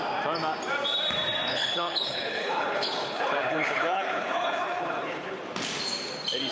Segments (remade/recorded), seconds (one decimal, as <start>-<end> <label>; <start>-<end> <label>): 0.0-1.5 recorded; 1.5-5.4 remade; 5.4-6.5 recorded